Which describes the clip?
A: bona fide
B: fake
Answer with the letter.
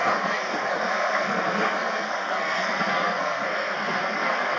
B